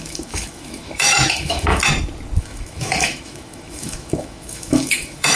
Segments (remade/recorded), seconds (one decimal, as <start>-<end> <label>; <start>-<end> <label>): 0.0-1.8 remade; 1.8-2.4 recorded; 2.4-5.4 remade